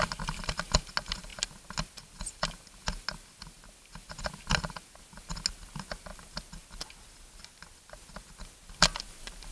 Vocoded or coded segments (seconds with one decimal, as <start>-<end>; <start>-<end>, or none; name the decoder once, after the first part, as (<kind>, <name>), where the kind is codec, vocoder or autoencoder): 6.1-6.8 (vocoder, BigVGAN v2)